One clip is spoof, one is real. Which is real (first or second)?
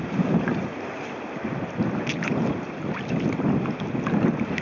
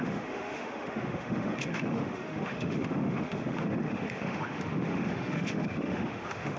first